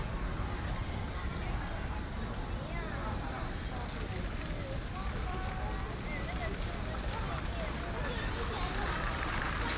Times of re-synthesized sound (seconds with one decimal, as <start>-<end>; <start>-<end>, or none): 1.3-5.5